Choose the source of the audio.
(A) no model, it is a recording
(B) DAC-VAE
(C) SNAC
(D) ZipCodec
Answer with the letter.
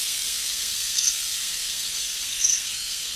C